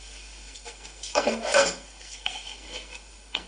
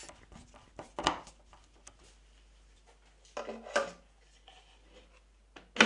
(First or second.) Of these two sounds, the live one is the second